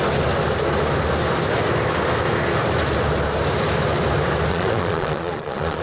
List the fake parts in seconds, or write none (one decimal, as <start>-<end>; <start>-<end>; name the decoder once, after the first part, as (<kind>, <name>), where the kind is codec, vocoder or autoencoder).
4.5-5.8 (vocoder, Vocos)